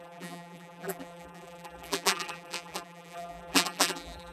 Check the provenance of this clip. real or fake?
fake